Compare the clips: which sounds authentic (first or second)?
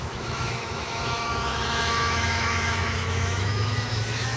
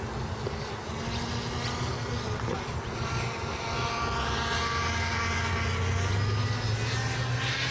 second